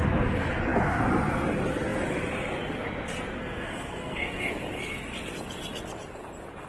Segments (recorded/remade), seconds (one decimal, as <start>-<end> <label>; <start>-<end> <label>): 0.0-3.4 recorded; 3.4-4.6 remade; 4.6-6.7 recorded

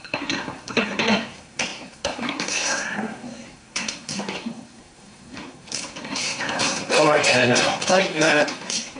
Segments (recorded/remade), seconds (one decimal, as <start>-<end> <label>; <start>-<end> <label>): 0.0-9.0 remade